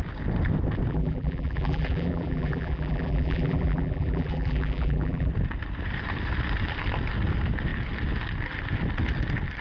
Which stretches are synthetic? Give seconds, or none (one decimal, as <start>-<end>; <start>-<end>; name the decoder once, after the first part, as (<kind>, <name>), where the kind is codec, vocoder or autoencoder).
0.9-5.3 (vocoder, BigVGAN v2)